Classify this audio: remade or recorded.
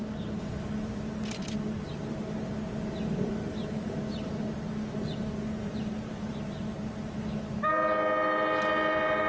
recorded